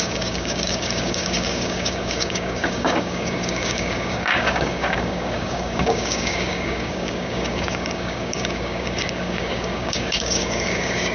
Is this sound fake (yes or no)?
yes